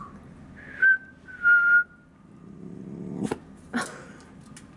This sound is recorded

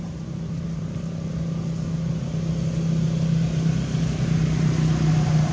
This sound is recorded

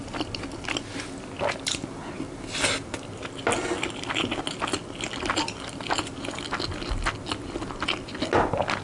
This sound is recorded